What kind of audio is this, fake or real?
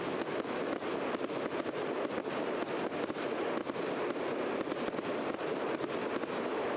real